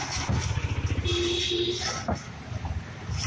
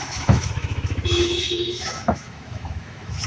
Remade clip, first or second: second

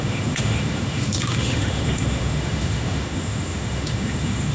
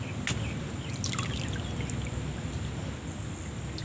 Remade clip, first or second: first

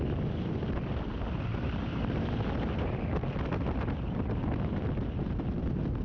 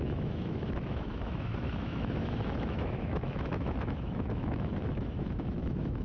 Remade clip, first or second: second